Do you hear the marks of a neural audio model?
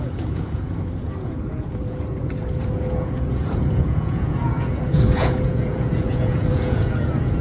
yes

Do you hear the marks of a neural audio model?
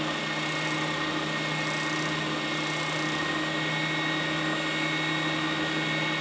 no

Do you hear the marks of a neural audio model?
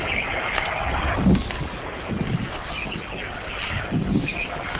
no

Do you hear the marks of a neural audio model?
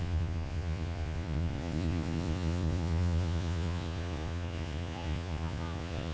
yes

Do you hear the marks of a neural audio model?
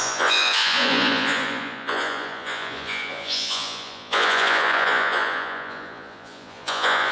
yes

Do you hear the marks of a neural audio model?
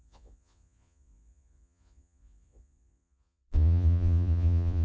yes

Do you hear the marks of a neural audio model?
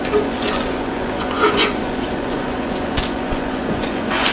yes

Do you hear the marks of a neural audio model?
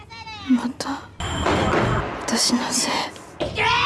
no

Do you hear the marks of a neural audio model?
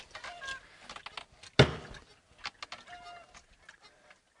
no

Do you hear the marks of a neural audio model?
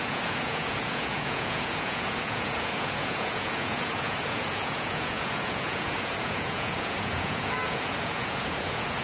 yes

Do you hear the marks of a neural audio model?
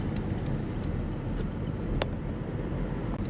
no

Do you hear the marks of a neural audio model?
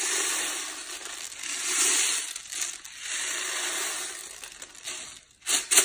no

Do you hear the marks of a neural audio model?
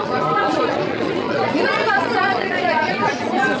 yes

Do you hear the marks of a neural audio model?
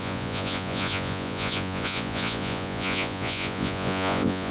yes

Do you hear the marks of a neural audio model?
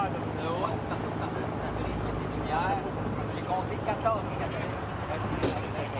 no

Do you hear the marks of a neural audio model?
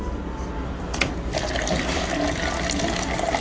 no